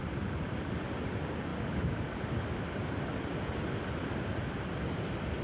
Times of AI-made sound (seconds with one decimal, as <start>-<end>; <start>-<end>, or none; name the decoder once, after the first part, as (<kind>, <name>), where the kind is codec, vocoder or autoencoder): none